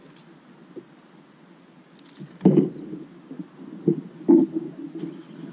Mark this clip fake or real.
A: real